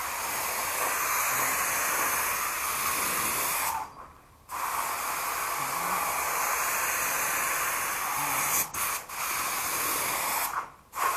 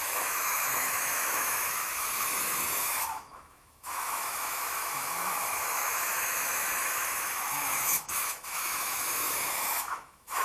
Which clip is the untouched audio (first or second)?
first